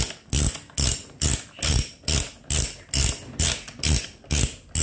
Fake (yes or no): no